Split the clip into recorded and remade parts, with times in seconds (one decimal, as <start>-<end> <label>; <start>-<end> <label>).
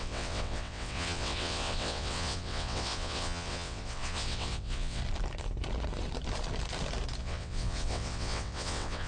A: 0.0-5.0 remade; 5.0-7.2 recorded; 7.2-9.1 remade